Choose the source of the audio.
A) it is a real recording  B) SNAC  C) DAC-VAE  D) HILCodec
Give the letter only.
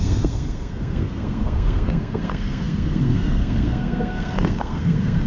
B